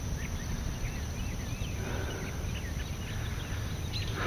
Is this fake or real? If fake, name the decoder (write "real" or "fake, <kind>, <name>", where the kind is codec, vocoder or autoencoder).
real